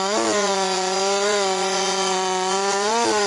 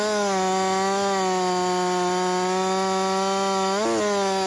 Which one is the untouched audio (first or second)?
second